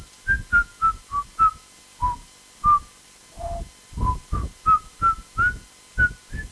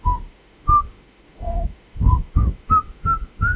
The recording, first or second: first